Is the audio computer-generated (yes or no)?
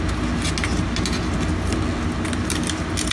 no